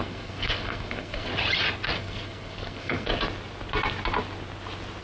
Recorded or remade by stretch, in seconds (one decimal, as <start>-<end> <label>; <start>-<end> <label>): 0.0-1.3 remade; 1.3-2.0 recorded; 2.0-3.1 remade; 3.1-5.0 recorded